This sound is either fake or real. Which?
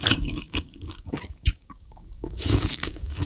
fake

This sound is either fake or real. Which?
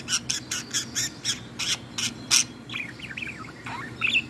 real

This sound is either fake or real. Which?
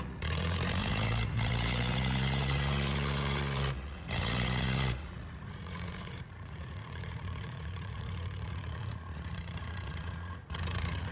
fake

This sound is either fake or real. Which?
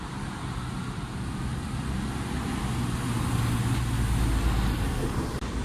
real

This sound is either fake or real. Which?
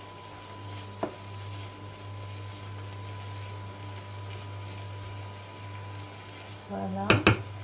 real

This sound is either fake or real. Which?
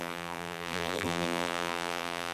fake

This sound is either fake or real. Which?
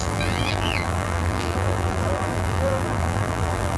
fake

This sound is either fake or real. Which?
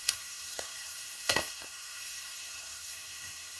fake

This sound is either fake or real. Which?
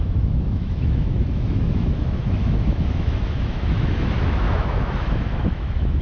fake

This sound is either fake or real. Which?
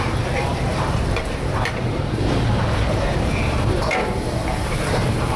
fake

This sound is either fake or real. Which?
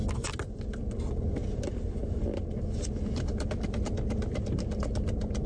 real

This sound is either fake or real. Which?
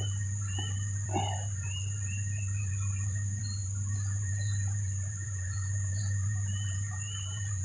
fake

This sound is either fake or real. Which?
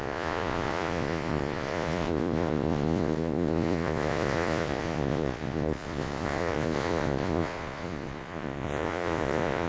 fake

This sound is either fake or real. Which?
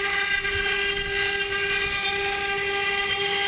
real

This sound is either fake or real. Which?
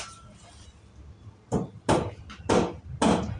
real